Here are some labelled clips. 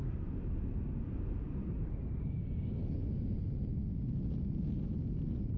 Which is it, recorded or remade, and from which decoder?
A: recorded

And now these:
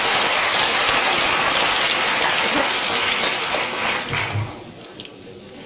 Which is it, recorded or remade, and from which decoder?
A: recorded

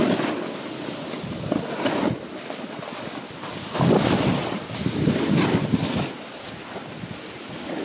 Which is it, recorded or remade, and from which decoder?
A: recorded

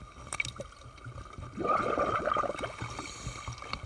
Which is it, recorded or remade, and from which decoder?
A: recorded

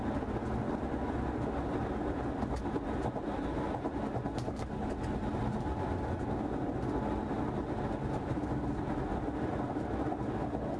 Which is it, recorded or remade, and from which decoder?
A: recorded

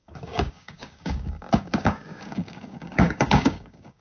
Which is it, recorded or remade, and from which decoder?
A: remade, codec, DAC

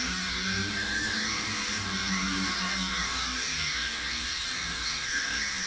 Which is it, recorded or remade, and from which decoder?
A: remade, codec, DAC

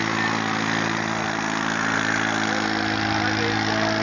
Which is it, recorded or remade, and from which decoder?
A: recorded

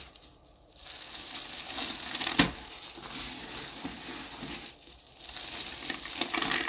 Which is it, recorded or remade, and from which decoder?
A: recorded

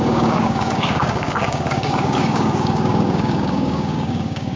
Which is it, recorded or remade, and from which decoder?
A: remade, codec, DAC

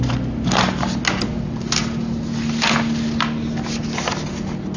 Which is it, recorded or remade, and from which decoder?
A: recorded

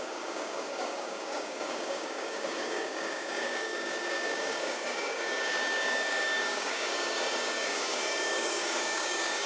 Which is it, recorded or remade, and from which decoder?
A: remade, codec, DAC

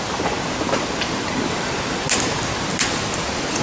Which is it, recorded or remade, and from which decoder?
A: recorded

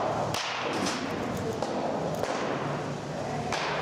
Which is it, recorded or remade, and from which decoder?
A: recorded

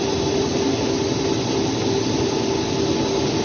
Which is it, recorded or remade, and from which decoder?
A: recorded